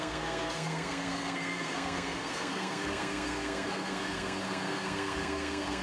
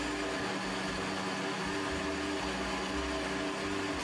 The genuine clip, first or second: second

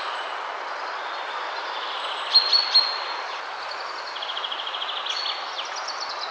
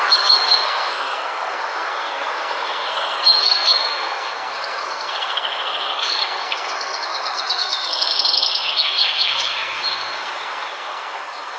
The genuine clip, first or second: first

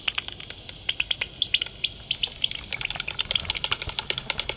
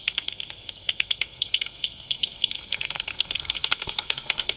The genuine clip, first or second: first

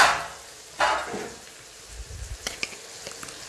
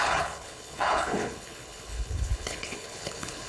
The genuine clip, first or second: first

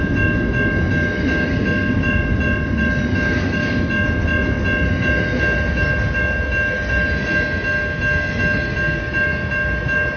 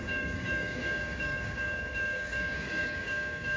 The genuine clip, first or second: first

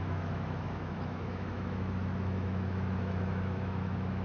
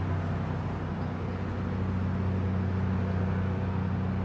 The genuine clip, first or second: second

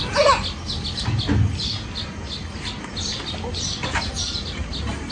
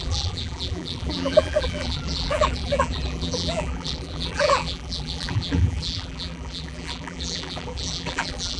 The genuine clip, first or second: first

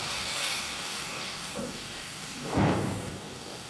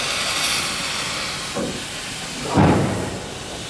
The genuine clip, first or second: second